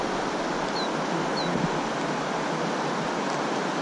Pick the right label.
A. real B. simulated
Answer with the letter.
A